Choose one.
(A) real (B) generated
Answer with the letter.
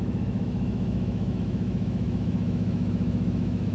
B